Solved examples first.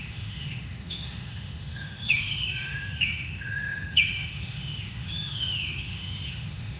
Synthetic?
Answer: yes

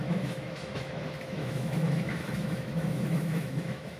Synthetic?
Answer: yes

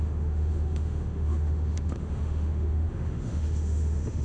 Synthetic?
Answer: yes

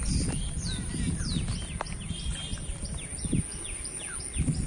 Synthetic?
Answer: no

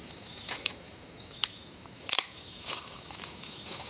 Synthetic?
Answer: yes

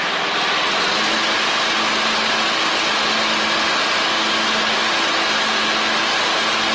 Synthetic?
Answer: no